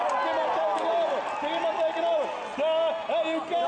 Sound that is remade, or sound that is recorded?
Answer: recorded